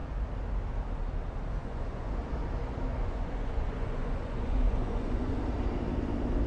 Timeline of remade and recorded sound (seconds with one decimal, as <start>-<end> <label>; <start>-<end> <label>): 0.0-1.6 recorded; 1.6-2.3 remade; 2.3-2.9 recorded; 2.9-5.4 remade; 5.4-6.5 recorded